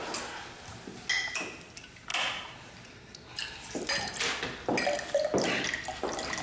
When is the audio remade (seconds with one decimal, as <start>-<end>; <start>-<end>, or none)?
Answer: 2.1-4.2